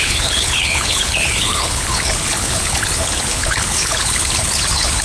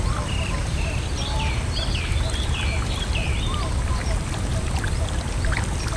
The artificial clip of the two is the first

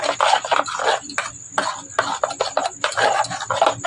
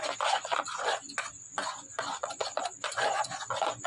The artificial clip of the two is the second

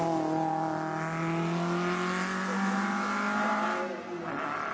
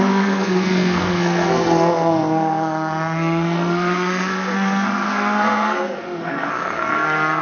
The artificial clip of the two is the second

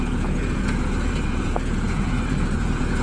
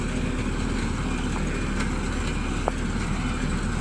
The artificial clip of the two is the first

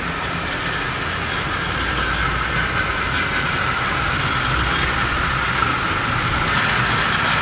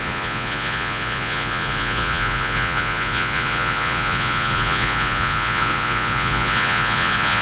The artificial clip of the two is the second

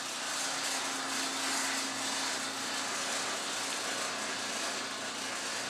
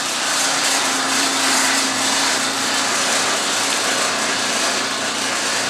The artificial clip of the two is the second